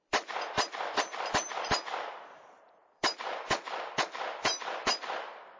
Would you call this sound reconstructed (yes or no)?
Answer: yes